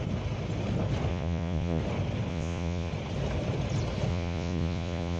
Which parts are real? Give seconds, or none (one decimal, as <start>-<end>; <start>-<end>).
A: 0.0-1.1; 1.8-2.3; 2.9-4.1